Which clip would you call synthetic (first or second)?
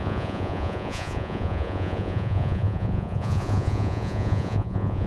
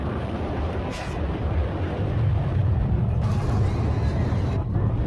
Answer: first